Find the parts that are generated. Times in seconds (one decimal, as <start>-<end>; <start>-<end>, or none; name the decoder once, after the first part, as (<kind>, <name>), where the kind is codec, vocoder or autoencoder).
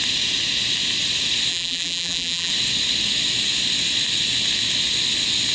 1.5-2.5 (vocoder, BigVGAN v2)